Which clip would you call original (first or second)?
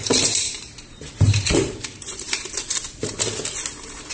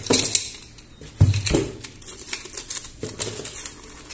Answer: second